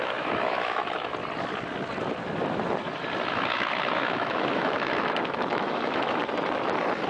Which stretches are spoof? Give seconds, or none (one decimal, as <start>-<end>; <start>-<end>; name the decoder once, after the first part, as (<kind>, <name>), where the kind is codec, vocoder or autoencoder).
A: 0.0-1.1 (autoencoder, DAC-VAE); 3.3-6.2